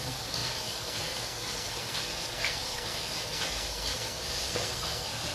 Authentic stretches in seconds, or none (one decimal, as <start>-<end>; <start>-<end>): none